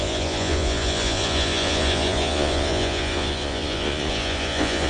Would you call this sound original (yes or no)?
no